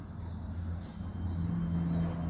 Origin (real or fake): real